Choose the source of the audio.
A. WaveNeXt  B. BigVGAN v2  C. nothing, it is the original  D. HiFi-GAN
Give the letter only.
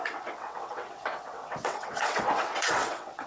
A